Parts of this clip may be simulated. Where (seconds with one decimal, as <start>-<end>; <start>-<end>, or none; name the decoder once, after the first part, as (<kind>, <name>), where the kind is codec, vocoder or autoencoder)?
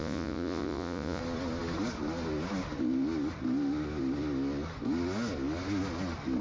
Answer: 0.0-1.2 (vocoder, Vocos)